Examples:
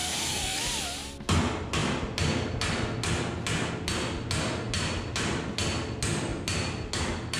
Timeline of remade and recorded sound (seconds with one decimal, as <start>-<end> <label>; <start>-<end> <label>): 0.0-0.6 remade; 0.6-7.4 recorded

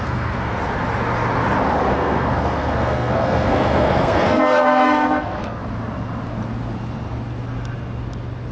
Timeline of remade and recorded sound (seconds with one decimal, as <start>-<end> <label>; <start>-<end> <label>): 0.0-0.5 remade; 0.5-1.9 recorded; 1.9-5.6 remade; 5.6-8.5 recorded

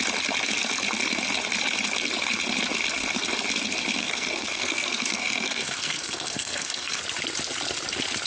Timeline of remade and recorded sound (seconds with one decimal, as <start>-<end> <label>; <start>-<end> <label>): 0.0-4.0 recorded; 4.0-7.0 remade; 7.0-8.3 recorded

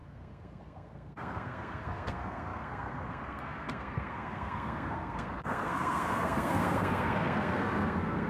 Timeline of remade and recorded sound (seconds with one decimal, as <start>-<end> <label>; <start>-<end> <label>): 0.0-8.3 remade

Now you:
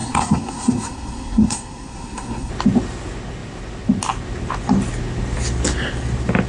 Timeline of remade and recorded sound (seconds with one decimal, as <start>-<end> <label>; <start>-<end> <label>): 0.0-2.5 remade; 2.5-6.5 recorded